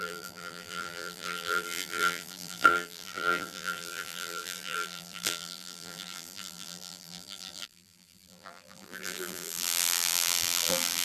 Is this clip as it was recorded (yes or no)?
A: no